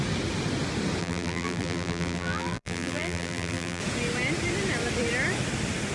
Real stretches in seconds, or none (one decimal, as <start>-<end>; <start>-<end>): 0.0-1.0; 3.8-5.9